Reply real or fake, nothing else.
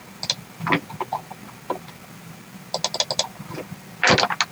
real